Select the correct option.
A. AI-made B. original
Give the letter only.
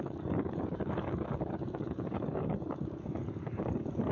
A